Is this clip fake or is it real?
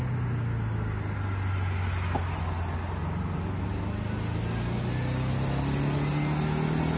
real